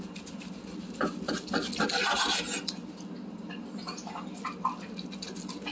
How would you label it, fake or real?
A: real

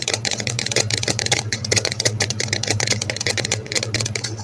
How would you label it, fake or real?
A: fake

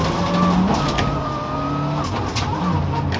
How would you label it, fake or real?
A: real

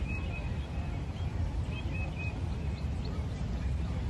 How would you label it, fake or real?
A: real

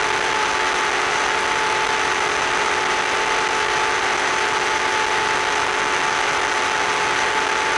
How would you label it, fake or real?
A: real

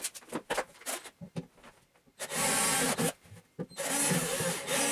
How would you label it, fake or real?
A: real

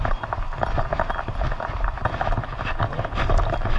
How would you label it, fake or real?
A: real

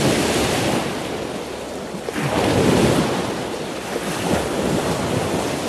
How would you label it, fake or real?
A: real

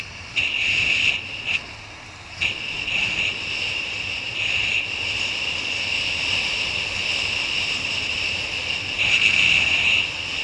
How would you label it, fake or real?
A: real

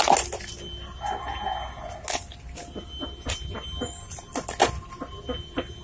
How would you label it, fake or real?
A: real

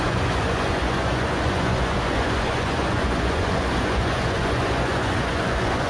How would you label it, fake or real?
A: fake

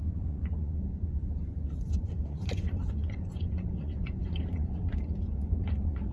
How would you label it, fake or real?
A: fake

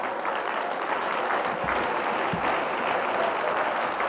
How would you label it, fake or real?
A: real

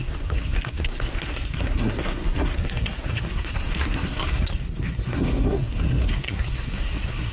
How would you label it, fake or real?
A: fake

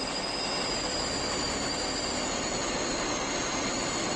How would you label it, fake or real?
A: real